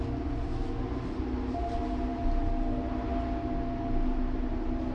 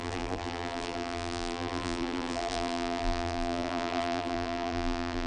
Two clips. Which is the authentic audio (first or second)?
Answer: first